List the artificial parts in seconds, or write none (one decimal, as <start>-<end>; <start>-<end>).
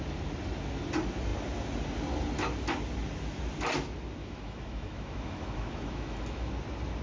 4.2-6.5